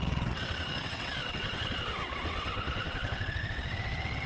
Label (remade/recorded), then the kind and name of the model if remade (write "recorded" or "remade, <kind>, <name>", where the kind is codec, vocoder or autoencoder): remade, vocoder, WaveNeXt